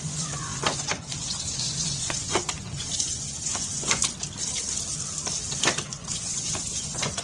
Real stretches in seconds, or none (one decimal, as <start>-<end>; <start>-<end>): 4.0-5.9